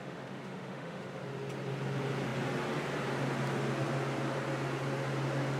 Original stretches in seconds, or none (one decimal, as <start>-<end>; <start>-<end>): 1.2-5.6